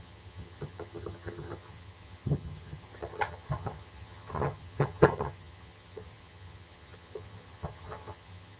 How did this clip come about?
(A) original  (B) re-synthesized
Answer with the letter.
B